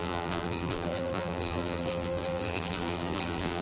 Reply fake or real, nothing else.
fake